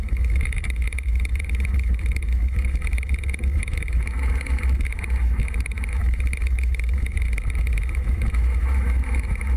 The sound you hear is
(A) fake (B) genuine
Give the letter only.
A